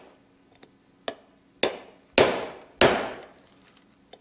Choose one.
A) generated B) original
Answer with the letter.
B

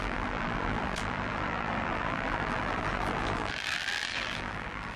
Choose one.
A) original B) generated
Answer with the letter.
B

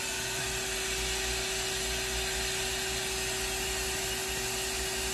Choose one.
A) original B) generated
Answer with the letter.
A